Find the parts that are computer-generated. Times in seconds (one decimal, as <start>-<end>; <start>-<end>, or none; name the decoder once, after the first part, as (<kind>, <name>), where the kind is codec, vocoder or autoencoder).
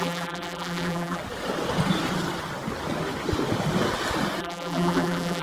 0.0-1.2 (vocoder, BigVGAN v2); 4.4-5.4